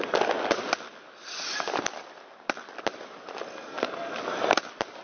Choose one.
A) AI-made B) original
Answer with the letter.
B